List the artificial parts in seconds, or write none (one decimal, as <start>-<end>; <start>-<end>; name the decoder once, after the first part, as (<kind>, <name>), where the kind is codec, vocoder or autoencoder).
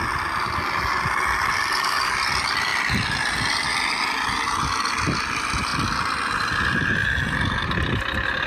none